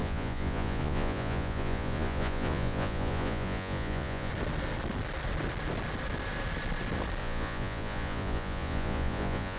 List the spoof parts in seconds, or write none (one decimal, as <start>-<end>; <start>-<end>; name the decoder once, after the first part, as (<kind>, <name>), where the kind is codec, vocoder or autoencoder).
0.0-4.3 (vocoder, Vocos); 7.2-9.6